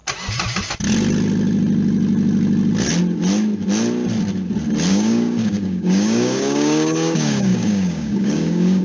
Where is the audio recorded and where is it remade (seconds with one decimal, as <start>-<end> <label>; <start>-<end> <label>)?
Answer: 0.0-4.9 recorded; 4.9-8.8 remade